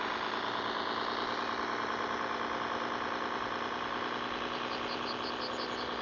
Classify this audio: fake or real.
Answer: real